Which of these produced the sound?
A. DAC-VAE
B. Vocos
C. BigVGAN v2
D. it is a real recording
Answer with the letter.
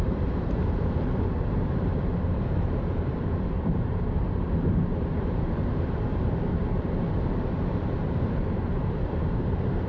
C